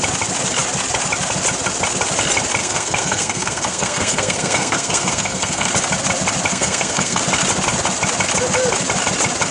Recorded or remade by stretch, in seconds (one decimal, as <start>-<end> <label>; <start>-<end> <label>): 0.0-2.6 recorded; 2.6-5.7 remade; 5.7-6.5 recorded; 6.5-7.2 remade; 7.2-9.5 recorded